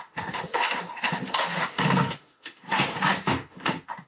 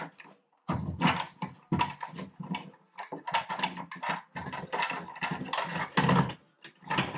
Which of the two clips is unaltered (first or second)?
second